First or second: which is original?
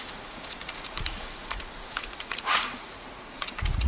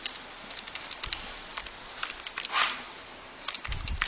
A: second